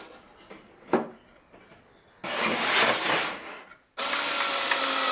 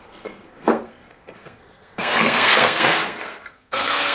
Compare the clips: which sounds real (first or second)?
first